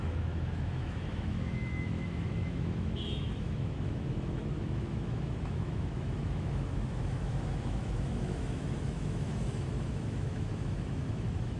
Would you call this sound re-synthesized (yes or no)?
yes